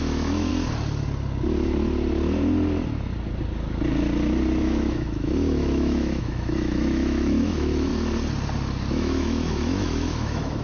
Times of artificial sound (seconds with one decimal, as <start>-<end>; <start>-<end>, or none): 0.0-0.5; 4.6-7.9; 8.9-10.6